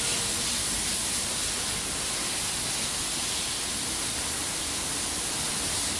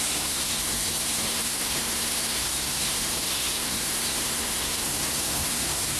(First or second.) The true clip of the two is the first